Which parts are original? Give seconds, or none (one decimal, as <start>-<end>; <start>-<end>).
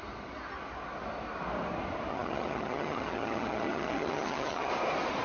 0.0-2.1; 4.7-5.2